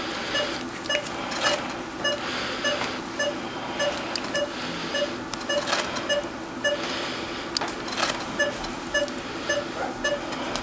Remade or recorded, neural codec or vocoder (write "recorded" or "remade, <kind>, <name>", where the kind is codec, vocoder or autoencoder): recorded